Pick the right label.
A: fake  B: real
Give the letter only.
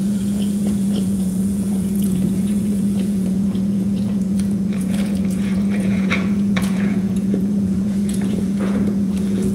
A